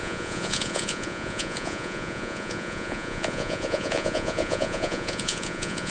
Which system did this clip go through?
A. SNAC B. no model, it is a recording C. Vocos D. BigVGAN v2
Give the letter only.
C